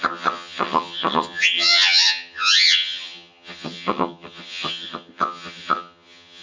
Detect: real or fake fake